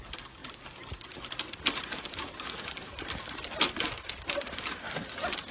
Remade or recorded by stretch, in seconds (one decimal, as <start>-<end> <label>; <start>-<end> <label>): 0.0-5.5 recorded